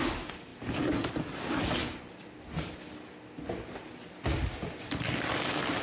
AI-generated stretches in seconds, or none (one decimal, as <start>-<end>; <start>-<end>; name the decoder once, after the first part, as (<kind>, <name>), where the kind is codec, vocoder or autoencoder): none

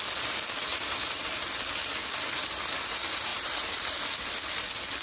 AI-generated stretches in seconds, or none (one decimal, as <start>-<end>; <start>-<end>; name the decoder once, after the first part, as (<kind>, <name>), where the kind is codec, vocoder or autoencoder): 0.7-1.3 (vocoder, BigVGAN v2); 3.3-4.3

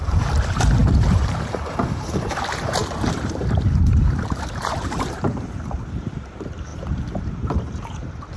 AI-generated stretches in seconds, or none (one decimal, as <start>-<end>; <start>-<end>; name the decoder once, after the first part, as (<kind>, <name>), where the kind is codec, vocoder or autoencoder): 0.0-8.4 (vocoder, BigVGAN v2)

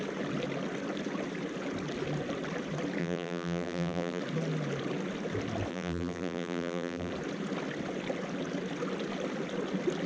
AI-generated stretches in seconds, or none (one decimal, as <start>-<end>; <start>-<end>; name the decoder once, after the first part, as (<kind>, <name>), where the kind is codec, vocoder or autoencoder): 3.0-4.2 (vocoder, BigVGAN v2); 5.7-7.1

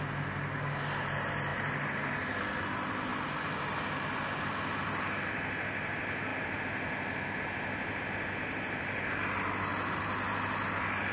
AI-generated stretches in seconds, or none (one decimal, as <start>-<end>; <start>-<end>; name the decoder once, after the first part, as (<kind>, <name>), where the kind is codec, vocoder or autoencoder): none

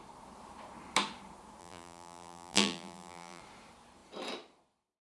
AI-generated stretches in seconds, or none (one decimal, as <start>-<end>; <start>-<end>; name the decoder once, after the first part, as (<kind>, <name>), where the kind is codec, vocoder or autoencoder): 1.6-3.4 (vocoder, BigVGAN v2)

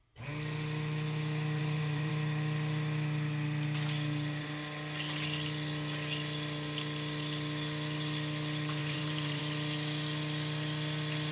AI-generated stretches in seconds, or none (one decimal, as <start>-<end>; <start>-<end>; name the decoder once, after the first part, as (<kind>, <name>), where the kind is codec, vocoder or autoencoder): 1.6-2.1 (vocoder, BigVGAN v2); 8.8-9.4